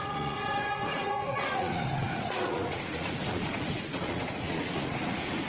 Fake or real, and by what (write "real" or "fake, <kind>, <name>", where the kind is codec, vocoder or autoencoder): fake, vocoder, Vocos